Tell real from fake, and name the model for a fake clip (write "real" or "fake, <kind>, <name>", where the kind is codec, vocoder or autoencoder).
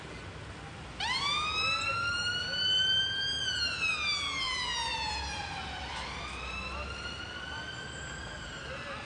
real